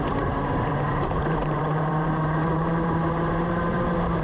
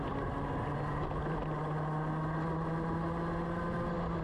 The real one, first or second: second